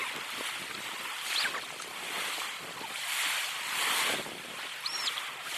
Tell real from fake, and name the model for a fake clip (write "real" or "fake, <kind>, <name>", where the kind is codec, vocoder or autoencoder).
real